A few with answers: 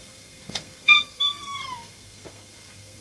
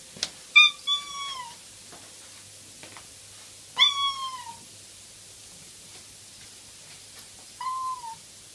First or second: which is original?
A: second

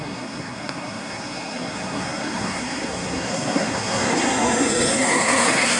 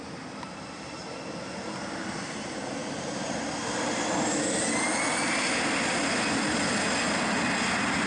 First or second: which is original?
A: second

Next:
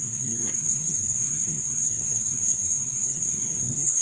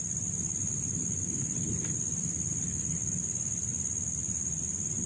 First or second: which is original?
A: second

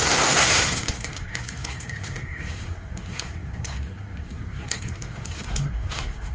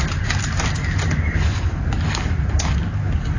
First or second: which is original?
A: second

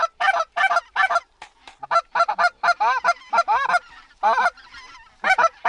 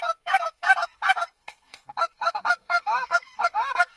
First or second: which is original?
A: first